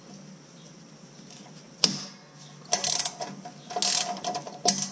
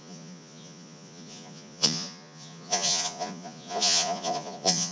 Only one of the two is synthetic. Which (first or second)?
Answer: second